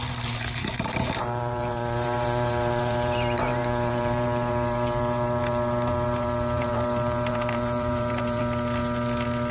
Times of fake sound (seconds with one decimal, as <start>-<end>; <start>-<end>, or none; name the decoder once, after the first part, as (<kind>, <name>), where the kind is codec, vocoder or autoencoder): 0.0-8.4 (vocoder, BigVGAN v2)